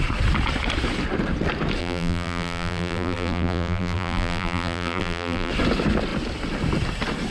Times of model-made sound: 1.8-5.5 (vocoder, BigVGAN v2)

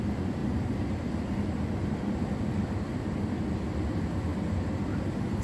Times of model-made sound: 4.3-5.4 (vocoder, BigVGAN v2)

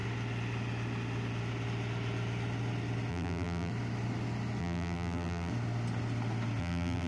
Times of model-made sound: 3.1-3.7 (vocoder, BigVGAN v2); 4.6-5.5; 6.6-7.1

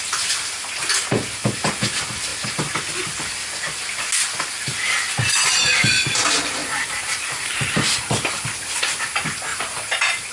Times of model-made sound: 6.6-7.8 (vocoder, BigVGAN v2); 9.5-10.3

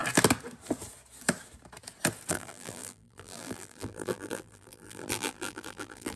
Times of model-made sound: 2.3-6.2 (vocoder, BigVGAN v2)

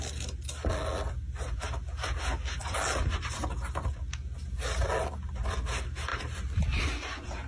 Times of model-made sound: 2.6-3.4 (vocoder, BigVGAN v2); 6.1-6.8

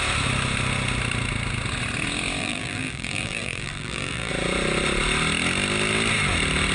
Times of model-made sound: 2.4-4.3 (vocoder, BigVGAN v2)